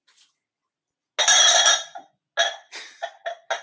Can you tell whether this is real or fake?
real